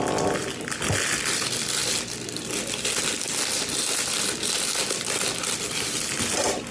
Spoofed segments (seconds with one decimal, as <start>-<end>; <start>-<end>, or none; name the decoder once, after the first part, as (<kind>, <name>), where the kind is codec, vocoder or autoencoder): none